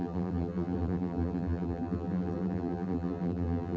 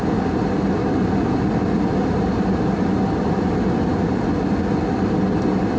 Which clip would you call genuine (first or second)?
second